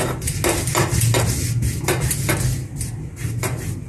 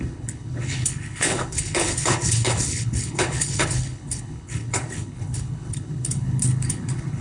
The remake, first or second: second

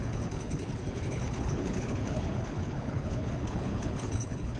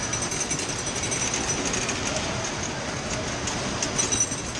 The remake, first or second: first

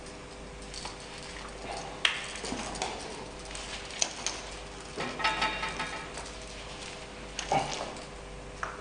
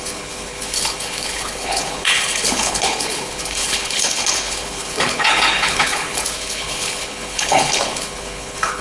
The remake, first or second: second